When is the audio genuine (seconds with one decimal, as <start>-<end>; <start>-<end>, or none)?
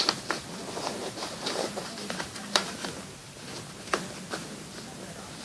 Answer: 0.0-1.0; 2.7-3.2; 3.7-5.4